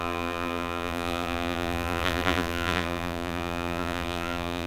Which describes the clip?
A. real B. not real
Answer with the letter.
B